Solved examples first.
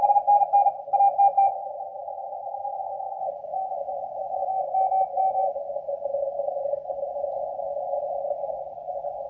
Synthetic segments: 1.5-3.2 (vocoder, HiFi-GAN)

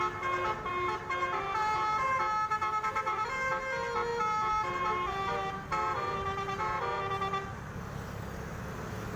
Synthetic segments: 0.7-3.5 (vocoder, BigVGAN v2); 4.1-6.6

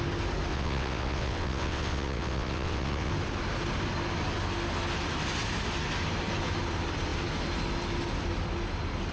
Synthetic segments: 0.5-3.1 (vocoder, WaveNeXt)